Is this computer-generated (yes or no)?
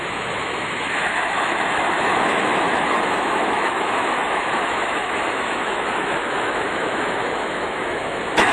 yes